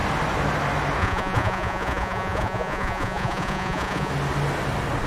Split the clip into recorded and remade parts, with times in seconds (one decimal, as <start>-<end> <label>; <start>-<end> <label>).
0.0-1.0 recorded; 1.0-4.1 remade; 4.1-5.1 recorded